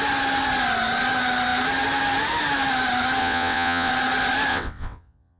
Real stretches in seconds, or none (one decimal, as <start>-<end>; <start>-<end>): 0.0-3.2; 3.9-4.5